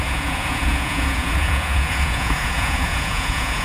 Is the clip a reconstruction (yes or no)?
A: yes